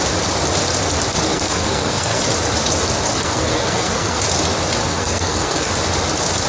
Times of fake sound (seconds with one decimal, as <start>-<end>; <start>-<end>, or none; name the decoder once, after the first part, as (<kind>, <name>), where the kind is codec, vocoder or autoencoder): 1.3-2.2 (codec, SNAC); 3.1-4.2; 4.8-5.7